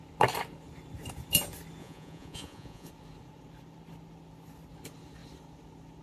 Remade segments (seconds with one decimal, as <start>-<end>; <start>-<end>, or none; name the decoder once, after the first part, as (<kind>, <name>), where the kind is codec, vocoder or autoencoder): 1.8-2.9 (vocoder, Vocos)